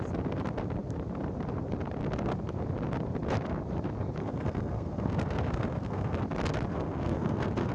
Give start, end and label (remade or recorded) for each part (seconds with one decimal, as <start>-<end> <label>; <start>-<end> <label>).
0.0-4.2 recorded; 4.2-6.2 remade; 6.2-6.7 recorded; 6.7-7.7 remade